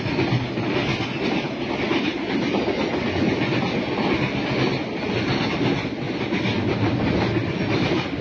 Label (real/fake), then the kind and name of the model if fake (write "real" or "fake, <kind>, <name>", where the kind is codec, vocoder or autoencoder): real